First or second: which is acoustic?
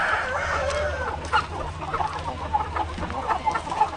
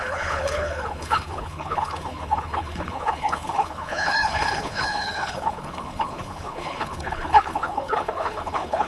first